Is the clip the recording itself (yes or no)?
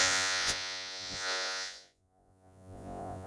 no